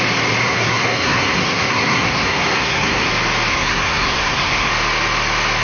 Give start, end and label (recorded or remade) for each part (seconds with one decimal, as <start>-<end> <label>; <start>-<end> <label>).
0.0-0.4 recorded; 0.4-3.1 remade; 3.1-3.5 recorded; 3.5-4.7 remade; 4.7-5.6 recorded